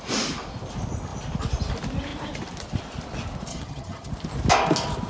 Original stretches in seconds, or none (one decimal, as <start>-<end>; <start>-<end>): 0.0-3.5; 4.1-5.1